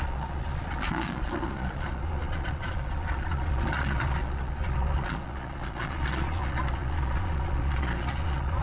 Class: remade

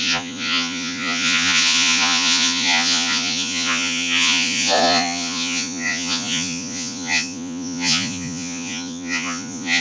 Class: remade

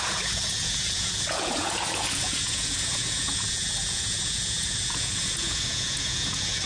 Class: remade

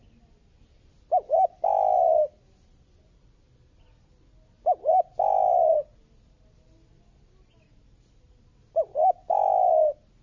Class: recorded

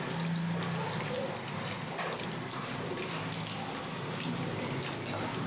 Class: recorded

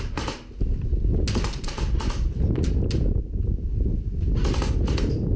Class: recorded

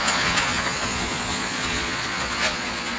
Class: remade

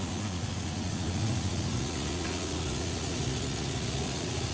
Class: remade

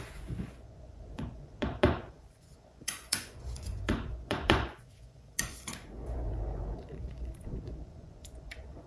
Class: remade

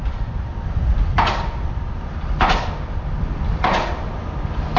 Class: recorded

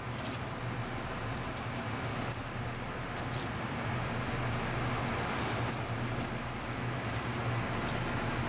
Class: recorded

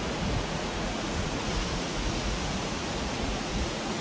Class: remade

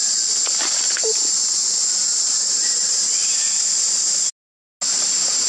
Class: recorded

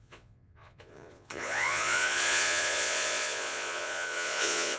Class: remade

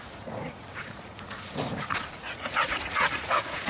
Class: remade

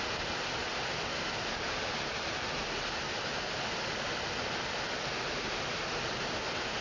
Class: recorded